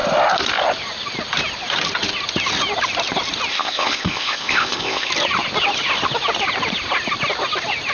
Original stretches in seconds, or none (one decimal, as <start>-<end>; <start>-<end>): 0.0-3.5; 5.1-7.9